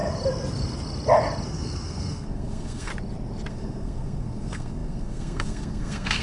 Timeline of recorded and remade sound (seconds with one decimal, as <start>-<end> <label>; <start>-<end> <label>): 0.0-1.5 recorded; 1.5-2.9 remade; 2.9-3.5 recorded; 3.5-6.2 remade

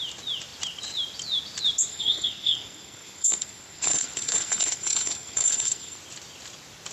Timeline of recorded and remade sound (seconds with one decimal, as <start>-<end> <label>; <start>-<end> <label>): 0.0-1.9 recorded; 1.9-6.0 remade; 6.0-6.9 recorded

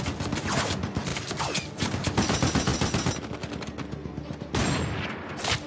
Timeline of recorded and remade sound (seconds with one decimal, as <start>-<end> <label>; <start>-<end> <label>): 0.0-5.7 recorded

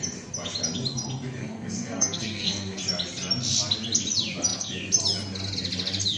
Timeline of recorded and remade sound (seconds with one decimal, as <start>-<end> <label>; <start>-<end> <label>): 0.0-1.4 recorded; 1.4-2.8 remade; 2.8-6.2 recorded

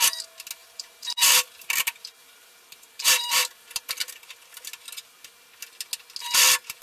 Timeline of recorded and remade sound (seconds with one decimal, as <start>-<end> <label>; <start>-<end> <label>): 0.0-0.6 recorded; 0.6-1.3 remade; 1.3-2.2 recorded; 2.2-3.3 remade; 3.3-6.8 recorded